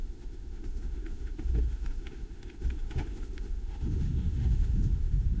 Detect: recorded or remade remade